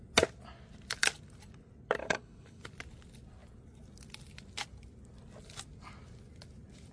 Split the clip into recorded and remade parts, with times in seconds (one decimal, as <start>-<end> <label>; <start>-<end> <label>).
0.0-2.0 recorded; 2.0-2.6 remade; 2.6-6.9 recorded